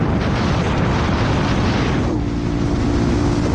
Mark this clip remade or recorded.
recorded